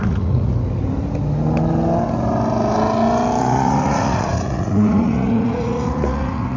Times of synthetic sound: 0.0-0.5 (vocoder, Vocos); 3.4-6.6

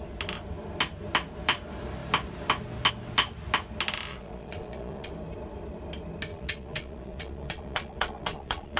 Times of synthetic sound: 4.1-5.1 (vocoder, Vocos); 6.3-8.8